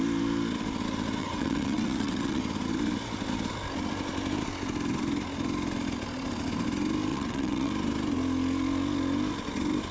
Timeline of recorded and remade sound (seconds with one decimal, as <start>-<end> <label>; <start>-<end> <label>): 0.0-1.2 recorded; 1.2-2.4 remade; 2.4-7.1 recorded; 7.1-7.7 remade; 7.7-9.9 recorded